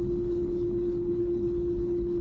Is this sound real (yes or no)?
no